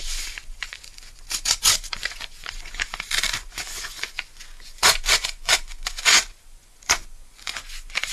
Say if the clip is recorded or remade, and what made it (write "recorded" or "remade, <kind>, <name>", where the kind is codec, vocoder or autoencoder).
remade, vocoder, Vocos